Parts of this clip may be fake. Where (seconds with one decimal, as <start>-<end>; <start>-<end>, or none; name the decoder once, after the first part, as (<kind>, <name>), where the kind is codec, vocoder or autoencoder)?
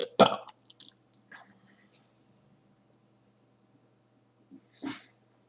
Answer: none